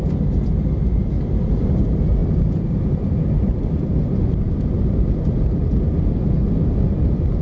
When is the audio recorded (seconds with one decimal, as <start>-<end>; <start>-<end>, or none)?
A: 0.0-2.2; 6.3-7.4